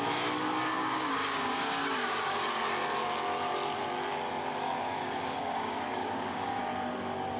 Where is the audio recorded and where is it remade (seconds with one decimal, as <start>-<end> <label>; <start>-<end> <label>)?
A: 0.0-0.7 recorded; 0.7-2.6 remade; 2.6-4.8 recorded; 4.8-6.6 remade; 6.6-7.4 recorded